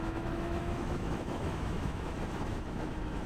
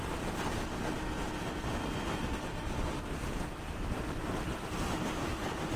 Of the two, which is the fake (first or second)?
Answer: first